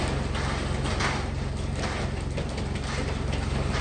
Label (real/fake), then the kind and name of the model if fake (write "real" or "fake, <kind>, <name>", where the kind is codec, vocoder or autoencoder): real